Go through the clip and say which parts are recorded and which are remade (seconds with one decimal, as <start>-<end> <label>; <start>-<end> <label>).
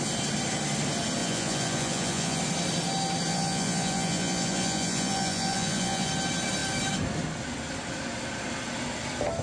0.0-1.2 recorded; 1.2-2.4 remade; 2.4-3.3 recorded; 3.3-6.1 remade; 6.1-9.4 recorded